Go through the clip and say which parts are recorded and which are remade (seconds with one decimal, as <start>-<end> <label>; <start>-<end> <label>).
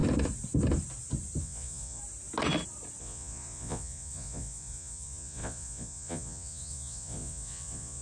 0.0-1.4 recorded; 1.4-2.0 remade; 2.0-3.0 recorded; 3.0-8.0 remade